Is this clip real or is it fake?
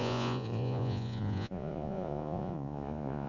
fake